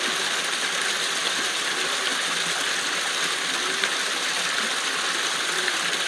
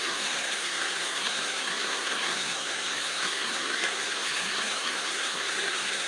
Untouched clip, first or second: first